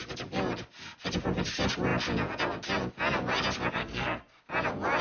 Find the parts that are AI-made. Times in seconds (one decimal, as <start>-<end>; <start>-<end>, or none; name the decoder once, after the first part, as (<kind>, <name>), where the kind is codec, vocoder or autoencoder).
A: 3.8-4.4 (codec, SNAC)